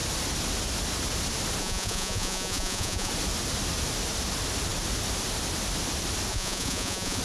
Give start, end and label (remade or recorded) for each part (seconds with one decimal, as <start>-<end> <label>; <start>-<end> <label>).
0.0-1.6 recorded; 1.6-3.1 remade; 3.1-6.3 recorded; 6.3-7.2 remade

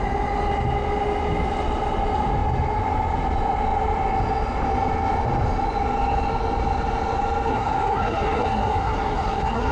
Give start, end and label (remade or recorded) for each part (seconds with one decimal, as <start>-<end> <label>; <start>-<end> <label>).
0.0-7.5 recorded; 7.5-9.7 remade

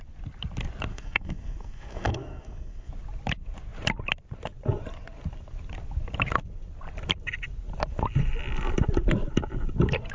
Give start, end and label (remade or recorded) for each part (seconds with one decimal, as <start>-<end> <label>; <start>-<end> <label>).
0.0-0.9 recorded; 0.9-2.9 remade; 2.9-10.1 recorded

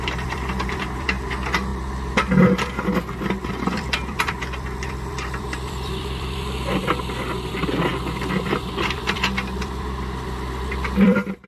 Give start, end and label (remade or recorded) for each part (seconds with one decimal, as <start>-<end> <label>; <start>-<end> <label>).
0.0-1.7 remade; 1.7-3.5 recorded; 3.5-6.8 remade; 6.8-7.5 recorded; 7.5-11.5 remade

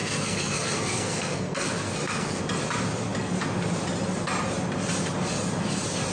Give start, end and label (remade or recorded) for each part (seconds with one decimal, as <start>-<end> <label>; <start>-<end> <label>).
0.0-2.4 remade; 2.4-6.1 recorded

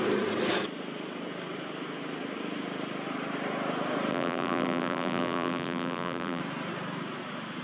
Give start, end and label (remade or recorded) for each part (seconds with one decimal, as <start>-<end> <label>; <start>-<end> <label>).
0.0-4.1 recorded; 4.1-6.4 remade; 6.4-7.6 recorded

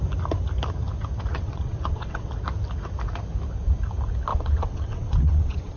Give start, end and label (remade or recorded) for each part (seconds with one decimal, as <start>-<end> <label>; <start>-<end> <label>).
0.0-1.3 recorded; 1.3-2.3 remade; 2.3-4.3 recorded; 4.3-5.8 remade

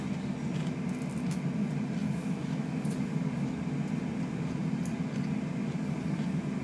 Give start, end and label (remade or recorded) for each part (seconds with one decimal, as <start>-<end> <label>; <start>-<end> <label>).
0.0-6.6 recorded